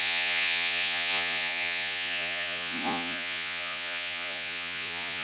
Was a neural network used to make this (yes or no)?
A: yes